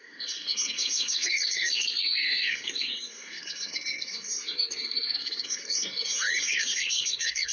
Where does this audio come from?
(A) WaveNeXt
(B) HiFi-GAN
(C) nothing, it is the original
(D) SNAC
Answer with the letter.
D